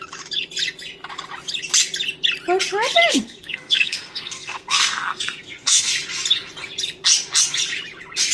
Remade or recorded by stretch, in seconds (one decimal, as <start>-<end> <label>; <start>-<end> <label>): 0.0-3.1 recorded; 3.1-5.9 remade; 5.9-8.3 recorded